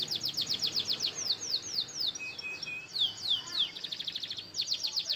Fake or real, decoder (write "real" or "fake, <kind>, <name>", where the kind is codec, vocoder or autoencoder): real